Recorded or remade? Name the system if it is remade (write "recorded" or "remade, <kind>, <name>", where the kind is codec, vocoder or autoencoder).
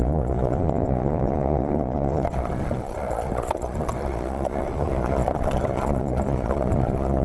remade, vocoder, Vocos